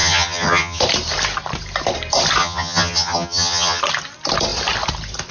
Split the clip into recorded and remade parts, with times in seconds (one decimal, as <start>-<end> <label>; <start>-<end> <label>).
0.0-0.8 remade; 0.8-2.4 recorded; 2.4-3.8 remade; 3.8-5.3 recorded